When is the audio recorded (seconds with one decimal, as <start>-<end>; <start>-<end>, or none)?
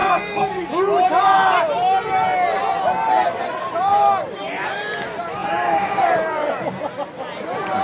0.7-7.8